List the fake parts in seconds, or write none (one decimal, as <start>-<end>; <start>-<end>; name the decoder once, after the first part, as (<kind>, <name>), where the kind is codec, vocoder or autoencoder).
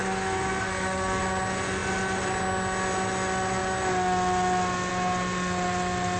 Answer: 0.0-1.2 (codec, SNAC)